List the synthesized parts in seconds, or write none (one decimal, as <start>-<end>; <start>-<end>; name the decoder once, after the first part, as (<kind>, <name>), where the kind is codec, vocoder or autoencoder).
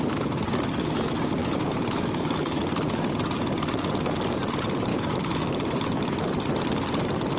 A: 1.4-2.6 (autoencoder, DAC-VAE); 4.9-5.5